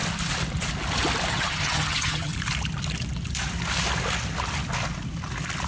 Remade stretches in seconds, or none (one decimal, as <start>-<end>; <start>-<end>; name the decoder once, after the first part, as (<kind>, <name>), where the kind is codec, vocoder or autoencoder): 1.3-2.3 (vocoder, HiFi-GAN)